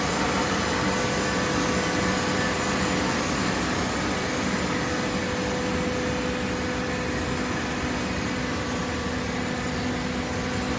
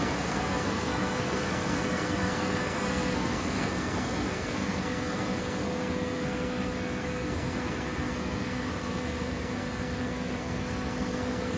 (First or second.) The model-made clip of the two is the second